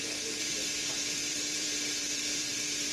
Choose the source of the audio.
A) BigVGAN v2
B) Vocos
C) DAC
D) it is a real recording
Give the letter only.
A